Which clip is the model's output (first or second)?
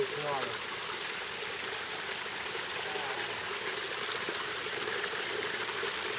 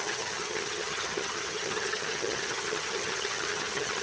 second